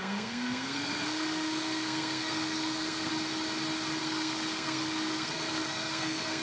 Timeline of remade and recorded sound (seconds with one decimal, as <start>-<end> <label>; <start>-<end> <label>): 0.0-3.1 remade; 3.1-4.0 recorded; 4.0-6.4 remade